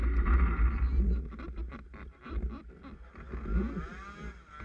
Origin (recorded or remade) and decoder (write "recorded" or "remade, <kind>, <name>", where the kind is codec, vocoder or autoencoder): recorded